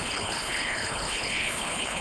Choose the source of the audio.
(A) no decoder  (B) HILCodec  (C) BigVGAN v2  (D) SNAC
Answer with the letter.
B